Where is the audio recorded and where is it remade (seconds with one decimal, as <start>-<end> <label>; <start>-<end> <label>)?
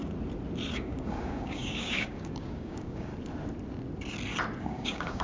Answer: 0.0-0.7 recorded; 0.7-3.1 remade; 3.1-4.6 recorded; 4.6-5.2 remade